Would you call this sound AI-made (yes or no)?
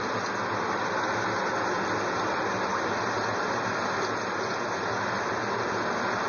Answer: no